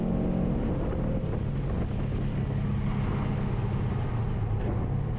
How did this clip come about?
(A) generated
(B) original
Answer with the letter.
B